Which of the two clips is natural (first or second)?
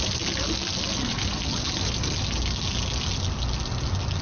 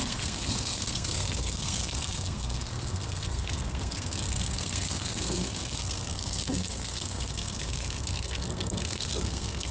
first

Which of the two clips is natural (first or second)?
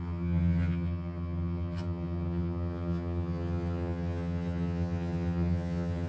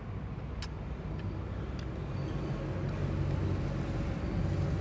second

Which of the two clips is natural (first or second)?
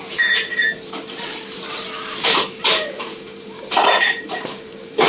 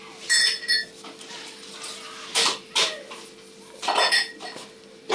second